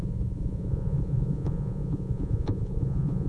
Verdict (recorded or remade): remade